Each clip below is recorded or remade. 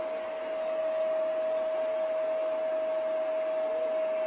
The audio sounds recorded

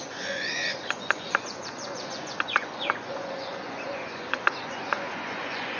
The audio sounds remade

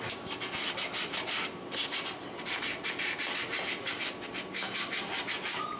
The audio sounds recorded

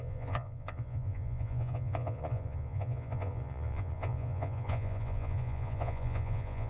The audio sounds remade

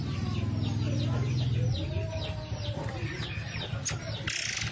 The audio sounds recorded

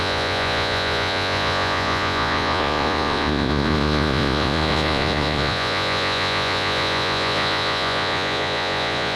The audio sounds remade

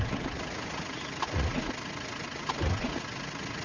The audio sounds remade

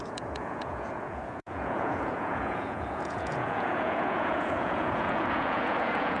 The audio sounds remade